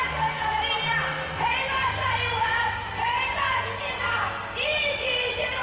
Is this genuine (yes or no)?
yes